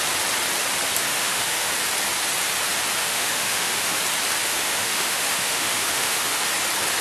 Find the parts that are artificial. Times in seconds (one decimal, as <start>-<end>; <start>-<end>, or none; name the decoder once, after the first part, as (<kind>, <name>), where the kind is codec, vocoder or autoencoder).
1.1-1.7 (autoencoder, DAC-VAE); 3.0-4.0; 4.5-6.5